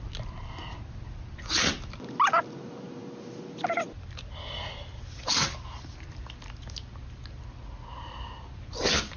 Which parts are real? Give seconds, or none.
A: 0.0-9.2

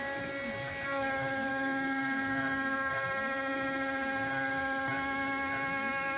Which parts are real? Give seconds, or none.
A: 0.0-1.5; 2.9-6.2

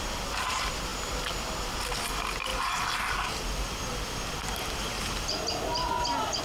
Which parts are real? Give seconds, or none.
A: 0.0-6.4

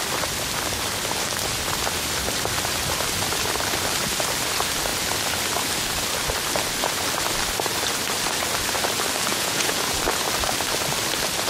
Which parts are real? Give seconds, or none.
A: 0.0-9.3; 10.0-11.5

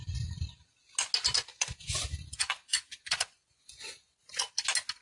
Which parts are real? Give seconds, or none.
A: 0.0-1.5; 4.5-5.0